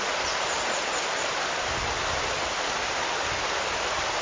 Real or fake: real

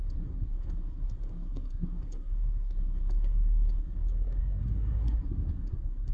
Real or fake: fake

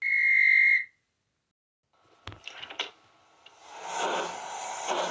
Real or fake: real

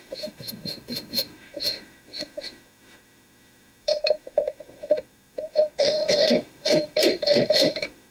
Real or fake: fake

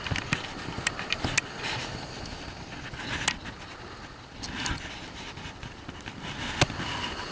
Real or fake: real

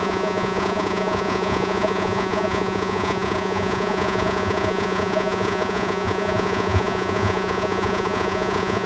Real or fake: fake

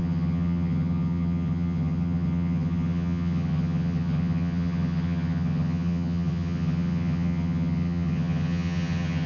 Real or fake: fake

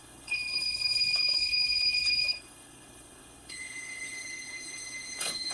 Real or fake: fake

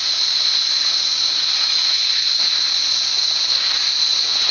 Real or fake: fake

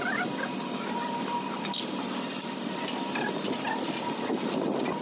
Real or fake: real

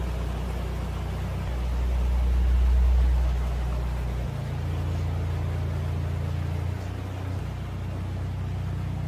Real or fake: real